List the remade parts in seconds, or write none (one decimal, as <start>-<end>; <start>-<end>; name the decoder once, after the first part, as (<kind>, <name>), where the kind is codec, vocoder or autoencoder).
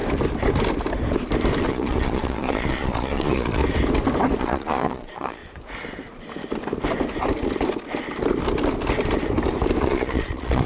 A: 1.7-3.6 (vocoder, Vocos); 4.4-5.4; 9.8-10.7